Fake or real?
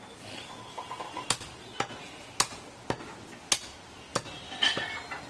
real